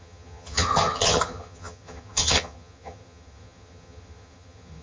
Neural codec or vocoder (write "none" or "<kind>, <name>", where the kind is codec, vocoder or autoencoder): vocoder, HiFi-GAN